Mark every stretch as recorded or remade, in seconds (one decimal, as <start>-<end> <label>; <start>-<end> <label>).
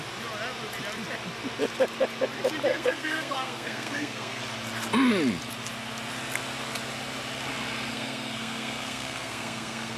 0.0-2.7 recorded; 2.7-4.4 remade; 4.4-7.9 recorded; 7.9-10.0 remade